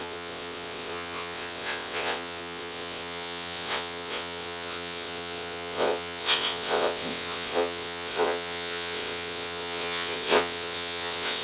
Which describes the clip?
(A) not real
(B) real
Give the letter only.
A